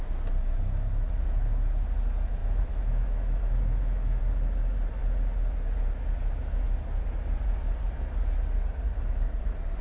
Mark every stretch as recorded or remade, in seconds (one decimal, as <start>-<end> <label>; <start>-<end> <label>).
0.0-2.4 recorded; 2.4-4.2 remade; 4.2-9.8 recorded